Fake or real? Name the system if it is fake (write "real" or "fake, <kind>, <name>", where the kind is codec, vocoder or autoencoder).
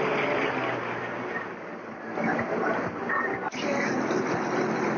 real